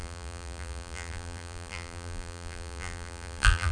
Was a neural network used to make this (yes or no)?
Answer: yes